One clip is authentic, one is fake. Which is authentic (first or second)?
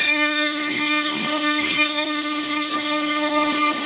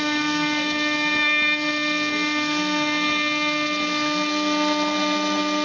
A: second